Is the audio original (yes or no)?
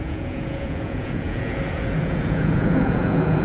no